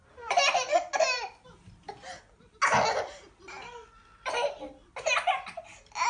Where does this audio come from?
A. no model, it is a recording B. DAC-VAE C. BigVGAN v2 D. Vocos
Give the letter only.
A